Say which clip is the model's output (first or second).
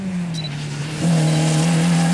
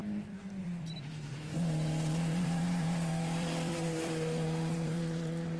second